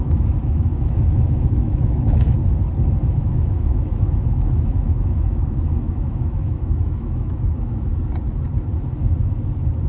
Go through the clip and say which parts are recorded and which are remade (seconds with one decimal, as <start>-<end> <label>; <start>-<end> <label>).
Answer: 0.0-2.4 remade; 2.4-3.2 recorded; 3.2-7.9 remade; 7.9-9.9 recorded